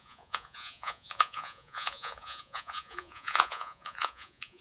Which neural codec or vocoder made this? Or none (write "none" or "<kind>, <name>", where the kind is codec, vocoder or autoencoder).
vocoder, Vocos